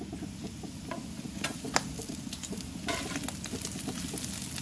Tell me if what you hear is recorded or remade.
recorded